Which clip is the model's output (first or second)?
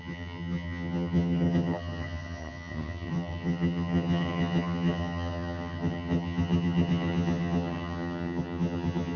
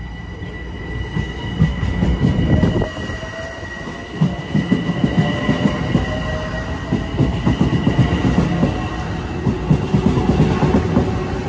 first